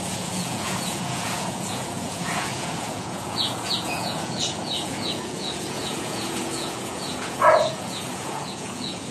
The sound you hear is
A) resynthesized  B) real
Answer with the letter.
A